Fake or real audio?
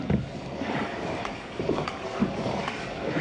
fake